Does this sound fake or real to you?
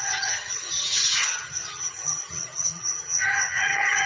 fake